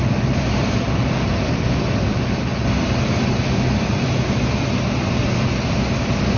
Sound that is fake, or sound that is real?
fake